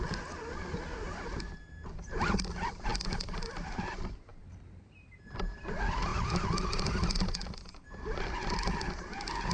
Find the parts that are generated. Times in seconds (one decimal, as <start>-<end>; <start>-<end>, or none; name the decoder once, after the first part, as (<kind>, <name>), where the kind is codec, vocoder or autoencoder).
2.9-3.7 (vocoder, BigVGAN v2); 4.3-4.8; 6.1-9.0